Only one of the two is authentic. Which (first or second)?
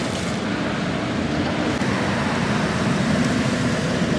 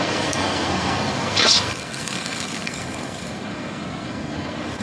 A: first